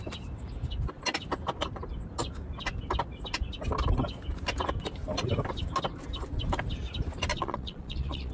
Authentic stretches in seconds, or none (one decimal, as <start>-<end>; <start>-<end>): 0.0-7.3